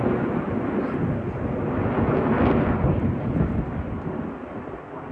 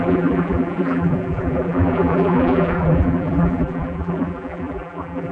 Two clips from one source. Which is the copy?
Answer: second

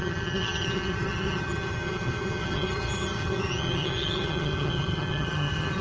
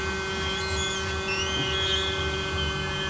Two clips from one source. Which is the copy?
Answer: first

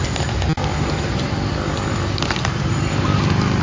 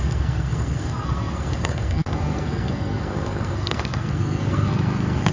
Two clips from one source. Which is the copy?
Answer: second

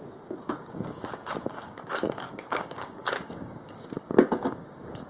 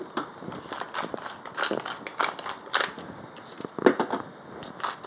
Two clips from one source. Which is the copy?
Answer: first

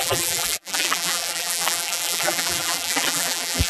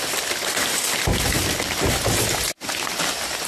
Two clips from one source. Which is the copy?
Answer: first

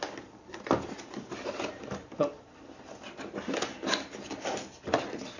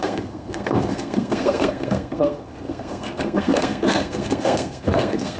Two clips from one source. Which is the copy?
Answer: second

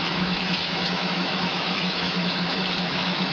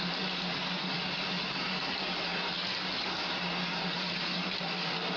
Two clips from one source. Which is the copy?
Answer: first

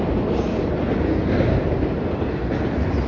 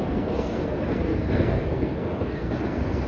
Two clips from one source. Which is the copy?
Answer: second